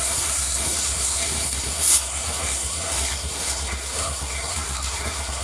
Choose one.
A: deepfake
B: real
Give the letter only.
A